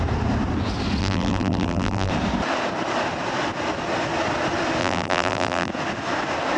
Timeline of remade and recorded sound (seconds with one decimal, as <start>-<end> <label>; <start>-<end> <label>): 0.0-1.0 recorded; 1.0-2.1 remade; 2.1-4.8 recorded; 4.8-5.7 remade; 5.7-6.6 recorded